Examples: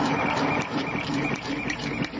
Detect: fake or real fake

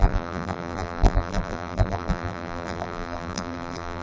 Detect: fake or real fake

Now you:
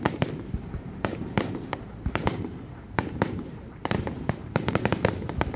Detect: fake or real fake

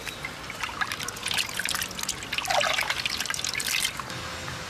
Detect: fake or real real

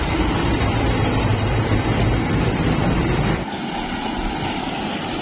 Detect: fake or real fake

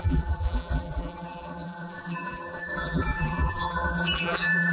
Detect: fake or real fake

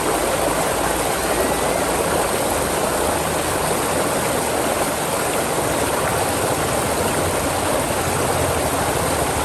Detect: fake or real real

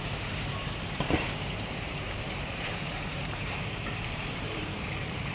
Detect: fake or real fake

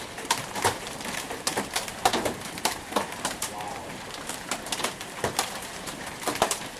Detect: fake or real fake